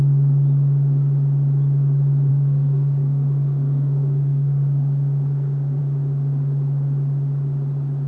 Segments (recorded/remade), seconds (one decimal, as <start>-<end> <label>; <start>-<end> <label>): 0.0-2.3 recorded; 2.3-5.8 remade; 5.8-8.1 recorded